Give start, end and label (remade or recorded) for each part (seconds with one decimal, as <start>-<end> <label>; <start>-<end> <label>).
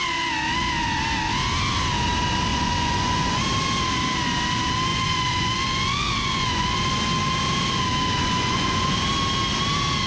0.0-2.5 recorded; 2.5-3.4 remade; 3.4-4.9 recorded; 4.9-6.8 remade; 6.8-8.2 recorded; 8.2-9.0 remade; 9.0-10.1 recorded